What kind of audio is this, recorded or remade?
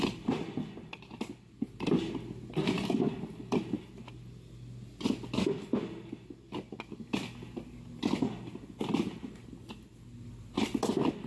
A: recorded